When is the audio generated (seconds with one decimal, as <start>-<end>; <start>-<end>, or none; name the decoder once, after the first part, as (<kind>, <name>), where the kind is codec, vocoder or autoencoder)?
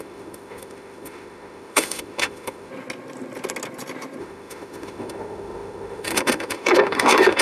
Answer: 0.0-2.7 (autoencoder, DAC-VAE); 4.2-7.4